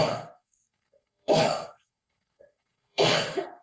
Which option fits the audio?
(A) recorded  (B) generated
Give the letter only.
B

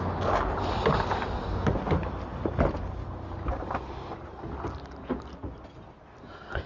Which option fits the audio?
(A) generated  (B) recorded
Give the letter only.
B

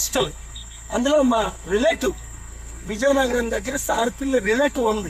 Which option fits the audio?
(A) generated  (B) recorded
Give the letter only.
A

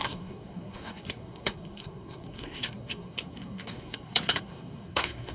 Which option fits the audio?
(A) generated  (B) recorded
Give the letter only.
A